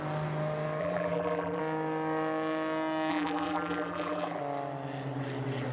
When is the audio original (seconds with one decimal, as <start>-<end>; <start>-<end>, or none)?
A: 0.0-0.8; 1.6-3.1; 4.4-5.7